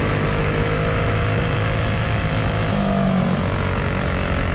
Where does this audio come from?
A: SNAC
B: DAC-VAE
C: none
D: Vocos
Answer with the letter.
B